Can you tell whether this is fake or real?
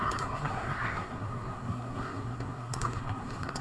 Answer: fake